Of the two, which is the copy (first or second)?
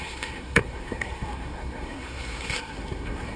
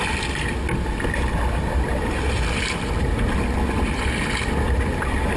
first